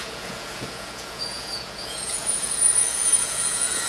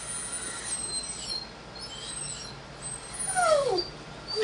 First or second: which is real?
second